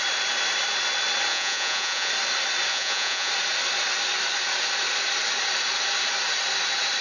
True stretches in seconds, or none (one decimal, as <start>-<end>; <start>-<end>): 0.0-1.3; 2.1-2.7; 3.3-7.0